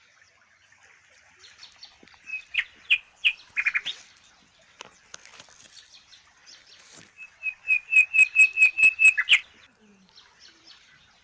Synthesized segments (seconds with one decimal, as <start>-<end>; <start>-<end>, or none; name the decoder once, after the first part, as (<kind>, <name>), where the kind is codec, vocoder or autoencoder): none